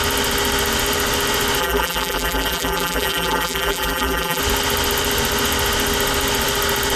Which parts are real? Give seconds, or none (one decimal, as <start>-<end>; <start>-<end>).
0.0-1.6; 4.4-7.0